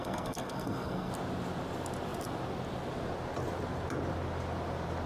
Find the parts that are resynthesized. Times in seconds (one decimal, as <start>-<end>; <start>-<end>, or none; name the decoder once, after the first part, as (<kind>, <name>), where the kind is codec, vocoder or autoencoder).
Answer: 0.0-1.1 (codec, SNAC)